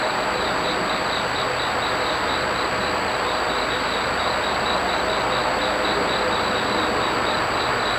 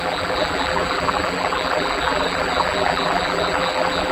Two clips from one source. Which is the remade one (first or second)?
second